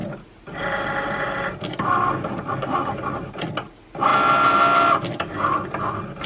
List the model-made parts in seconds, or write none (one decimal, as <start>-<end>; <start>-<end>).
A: none